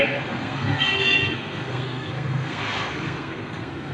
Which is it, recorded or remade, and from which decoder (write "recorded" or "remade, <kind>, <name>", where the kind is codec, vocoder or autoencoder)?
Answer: remade, codec, SNAC